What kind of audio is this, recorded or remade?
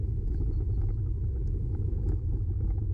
remade